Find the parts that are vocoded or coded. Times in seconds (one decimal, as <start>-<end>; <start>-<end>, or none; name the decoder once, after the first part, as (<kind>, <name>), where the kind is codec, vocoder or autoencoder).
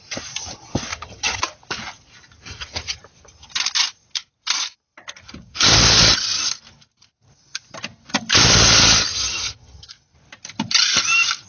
0.9-1.4 (vocoder, HiFi-GAN); 2.5-3.0; 9.1-9.9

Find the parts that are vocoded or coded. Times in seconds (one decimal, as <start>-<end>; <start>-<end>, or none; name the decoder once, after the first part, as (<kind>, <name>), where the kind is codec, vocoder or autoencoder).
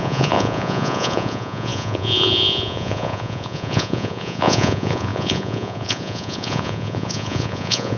0.0-8.0 (vocoder, Vocos)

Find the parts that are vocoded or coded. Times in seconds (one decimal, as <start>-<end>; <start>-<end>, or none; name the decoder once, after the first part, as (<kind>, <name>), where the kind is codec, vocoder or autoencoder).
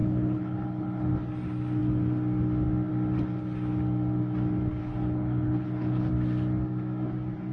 0.0-1.1 (codec, HILCodec); 4.8-6.1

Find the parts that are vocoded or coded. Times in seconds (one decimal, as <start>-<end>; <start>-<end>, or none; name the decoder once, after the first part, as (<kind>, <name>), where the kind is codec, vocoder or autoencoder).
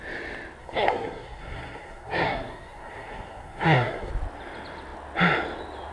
0.6-4.1 (codec, SNAC)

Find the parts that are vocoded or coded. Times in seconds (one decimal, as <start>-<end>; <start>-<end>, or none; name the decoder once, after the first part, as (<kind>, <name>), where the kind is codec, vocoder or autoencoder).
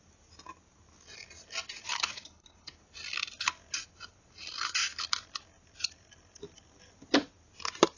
1.9-2.7 (codec, HILCodec)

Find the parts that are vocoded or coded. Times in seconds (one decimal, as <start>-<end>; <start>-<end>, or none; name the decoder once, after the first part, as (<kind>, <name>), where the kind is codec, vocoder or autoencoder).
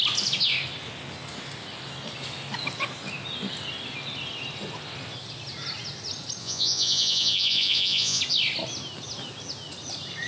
6.4-8.2 (vocoder, Vocos)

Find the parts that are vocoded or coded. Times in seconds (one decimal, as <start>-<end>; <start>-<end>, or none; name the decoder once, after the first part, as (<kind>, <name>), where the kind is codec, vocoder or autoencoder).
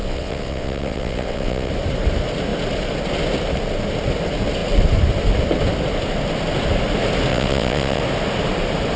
0.0-1.7 (vocoder, WaveNeXt); 7.3-8.0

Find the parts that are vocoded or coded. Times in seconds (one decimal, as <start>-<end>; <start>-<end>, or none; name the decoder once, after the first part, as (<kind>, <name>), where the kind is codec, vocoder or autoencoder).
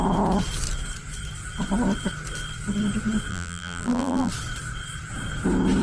3.3-4.3 (vocoder, BigVGAN v2)